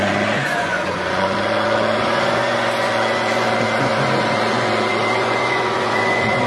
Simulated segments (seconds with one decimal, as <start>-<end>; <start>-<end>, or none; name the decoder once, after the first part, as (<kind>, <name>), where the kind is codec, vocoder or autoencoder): 0.0-6.5 (vocoder, Vocos)